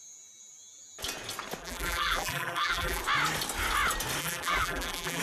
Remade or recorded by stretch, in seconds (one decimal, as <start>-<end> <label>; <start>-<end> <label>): 0.0-1.6 recorded; 1.6-3.0 remade; 3.0-4.2 recorded; 4.2-5.2 remade